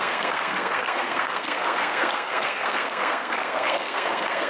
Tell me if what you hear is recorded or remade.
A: remade